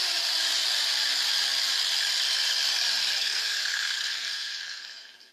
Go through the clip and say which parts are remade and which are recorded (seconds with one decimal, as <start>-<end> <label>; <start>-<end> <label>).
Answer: 0.0-3.2 recorded; 3.2-5.3 remade